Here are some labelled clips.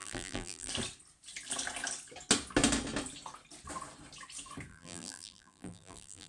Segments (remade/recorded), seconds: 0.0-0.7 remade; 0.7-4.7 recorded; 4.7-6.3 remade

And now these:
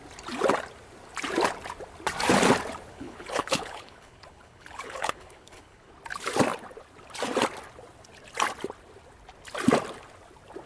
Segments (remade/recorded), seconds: 0.0-2.9 recorded; 2.9-5.9 remade; 5.9-10.7 recorded

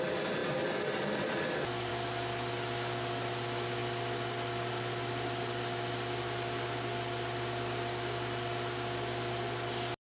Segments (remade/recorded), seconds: 0.0-10.1 recorded

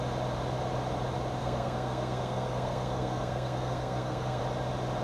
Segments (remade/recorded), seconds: 0.0-1.4 recorded; 1.4-4.4 remade; 4.4-5.0 recorded

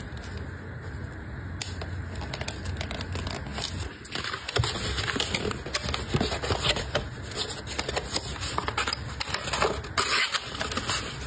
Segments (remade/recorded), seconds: 0.0-11.3 recorded

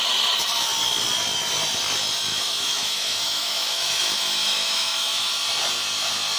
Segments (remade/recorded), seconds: 0.0-2.3 recorded; 2.3-5.3 remade; 5.3-6.4 recorded